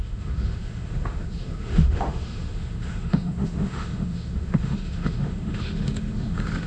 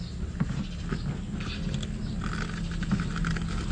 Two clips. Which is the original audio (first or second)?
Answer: second